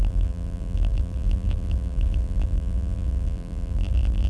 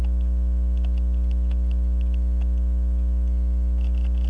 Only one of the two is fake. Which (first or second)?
first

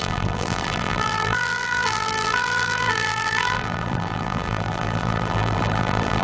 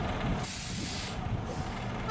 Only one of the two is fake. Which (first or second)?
first